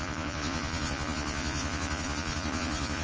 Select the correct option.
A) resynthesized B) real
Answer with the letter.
A